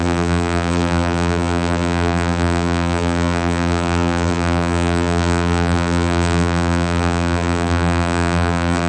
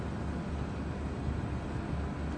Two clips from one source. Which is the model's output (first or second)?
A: first